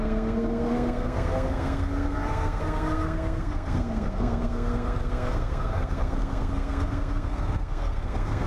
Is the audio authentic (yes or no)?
no